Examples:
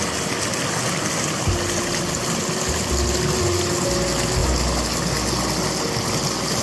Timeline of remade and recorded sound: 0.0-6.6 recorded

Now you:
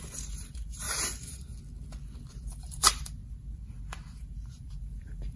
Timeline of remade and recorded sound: 0.0-1.5 remade; 1.5-2.3 recorded; 2.3-3.2 remade; 3.2-4.2 recorded; 4.2-5.4 remade